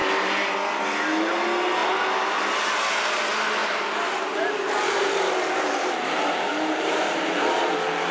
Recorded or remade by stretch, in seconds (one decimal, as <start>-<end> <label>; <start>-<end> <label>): 0.0-3.6 recorded; 3.6-8.1 remade